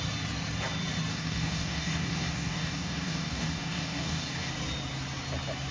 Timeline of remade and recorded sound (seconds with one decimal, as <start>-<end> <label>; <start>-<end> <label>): 0.0-1.1 recorded; 1.1-4.5 remade; 4.5-5.7 recorded